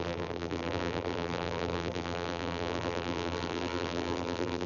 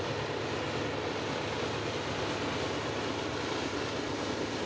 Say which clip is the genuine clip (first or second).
second